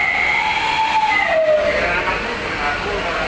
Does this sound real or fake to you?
real